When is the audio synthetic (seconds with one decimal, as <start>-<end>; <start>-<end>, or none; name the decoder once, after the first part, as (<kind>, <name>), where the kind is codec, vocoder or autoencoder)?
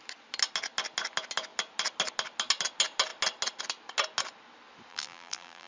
4.9-5.7 (vocoder, BigVGAN v2)